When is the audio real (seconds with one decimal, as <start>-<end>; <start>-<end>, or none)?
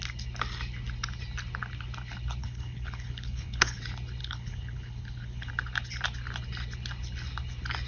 0.0-2.4; 3.8-4.2; 5.5-7.9